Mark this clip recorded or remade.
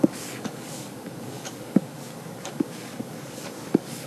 remade